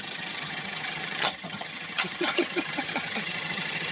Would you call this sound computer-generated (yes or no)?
yes